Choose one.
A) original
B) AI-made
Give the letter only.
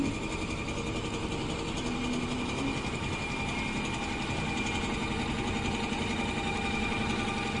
A